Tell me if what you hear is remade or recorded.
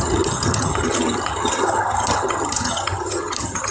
remade